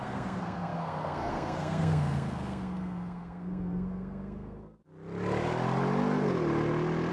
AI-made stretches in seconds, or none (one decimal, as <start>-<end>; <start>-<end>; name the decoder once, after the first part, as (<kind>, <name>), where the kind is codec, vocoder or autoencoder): 0.0-4.8 (codec, SNAC)